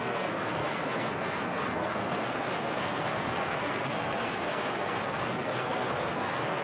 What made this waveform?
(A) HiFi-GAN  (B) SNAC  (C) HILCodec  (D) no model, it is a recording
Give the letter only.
B